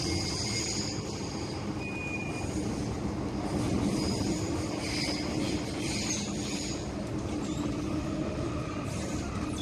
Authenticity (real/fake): real